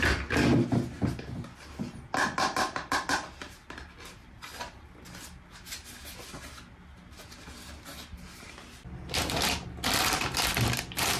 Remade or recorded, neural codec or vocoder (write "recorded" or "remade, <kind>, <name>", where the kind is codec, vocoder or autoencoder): recorded